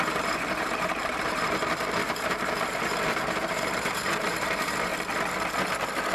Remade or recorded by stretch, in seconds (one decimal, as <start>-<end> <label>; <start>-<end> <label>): 0.0-4.9 remade; 4.9-6.1 recorded